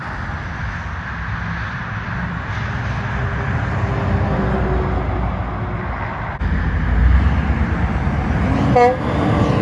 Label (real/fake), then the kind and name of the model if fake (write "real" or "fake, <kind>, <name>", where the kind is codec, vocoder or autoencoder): real